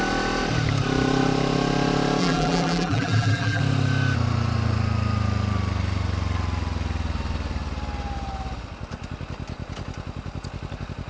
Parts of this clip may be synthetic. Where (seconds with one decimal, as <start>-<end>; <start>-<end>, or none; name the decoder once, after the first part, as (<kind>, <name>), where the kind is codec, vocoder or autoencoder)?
2.2-3.6 (vocoder, BigVGAN v2)